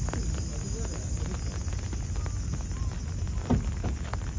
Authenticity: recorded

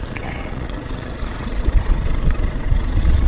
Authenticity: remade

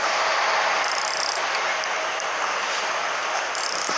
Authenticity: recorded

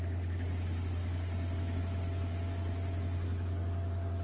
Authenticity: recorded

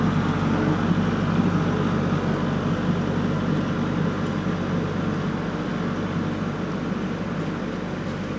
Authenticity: recorded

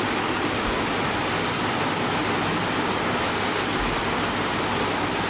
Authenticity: recorded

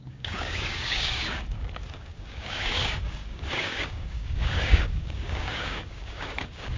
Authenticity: remade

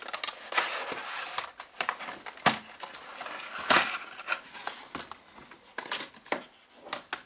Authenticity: recorded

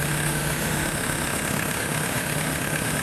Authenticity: remade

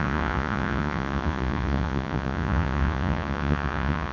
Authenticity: remade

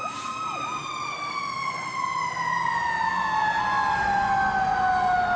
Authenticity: recorded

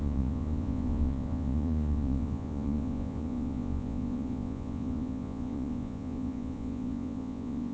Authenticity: remade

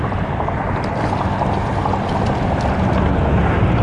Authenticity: recorded